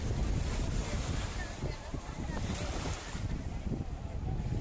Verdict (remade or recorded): recorded